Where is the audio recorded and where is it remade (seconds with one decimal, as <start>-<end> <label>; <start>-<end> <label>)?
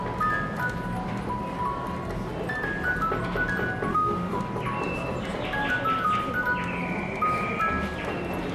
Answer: 0.0-3.9 recorded; 3.9-4.4 remade; 4.4-8.5 recorded